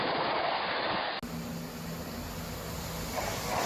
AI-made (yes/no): no